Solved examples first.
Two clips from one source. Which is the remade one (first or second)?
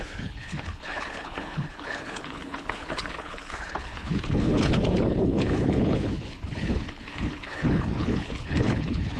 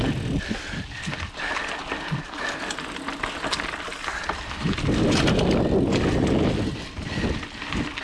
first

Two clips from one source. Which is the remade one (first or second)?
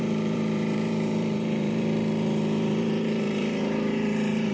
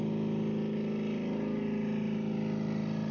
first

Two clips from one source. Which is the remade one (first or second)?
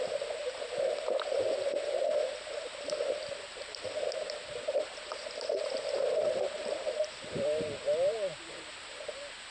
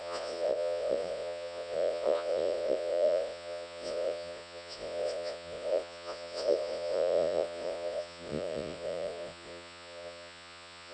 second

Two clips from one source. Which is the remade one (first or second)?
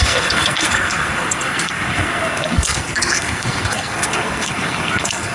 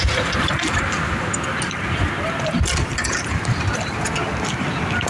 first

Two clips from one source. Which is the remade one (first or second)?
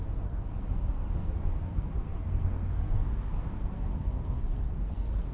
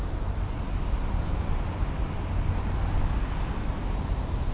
first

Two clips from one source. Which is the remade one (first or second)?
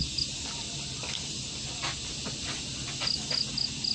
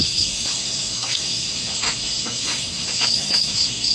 second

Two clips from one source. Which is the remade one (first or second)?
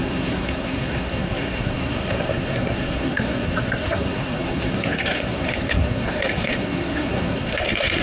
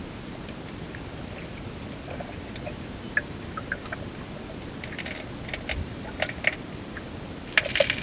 first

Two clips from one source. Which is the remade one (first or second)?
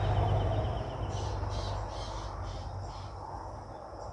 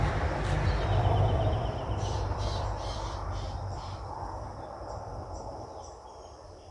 second